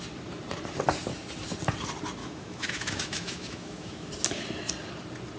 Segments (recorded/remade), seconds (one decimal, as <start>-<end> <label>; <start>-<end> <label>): 0.0-2.2 recorded; 2.2-4.1 remade; 4.1-5.4 recorded